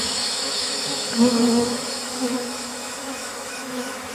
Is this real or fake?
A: fake